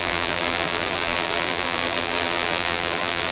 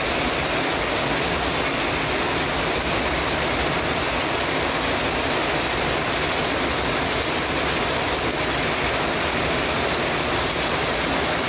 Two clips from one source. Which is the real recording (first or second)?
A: second